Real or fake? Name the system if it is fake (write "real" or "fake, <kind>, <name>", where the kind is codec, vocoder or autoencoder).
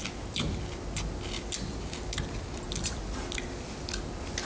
real